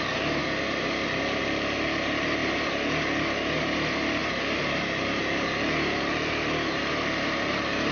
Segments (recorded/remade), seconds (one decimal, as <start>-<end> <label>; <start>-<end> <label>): 0.0-7.9 recorded